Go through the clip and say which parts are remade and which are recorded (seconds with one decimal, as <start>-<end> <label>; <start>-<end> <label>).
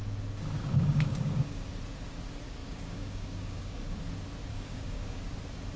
0.0-0.6 recorded; 0.6-1.7 remade; 1.7-2.6 recorded; 2.6-4.0 remade; 4.0-4.5 recorded; 4.5-5.2 remade; 5.2-5.8 recorded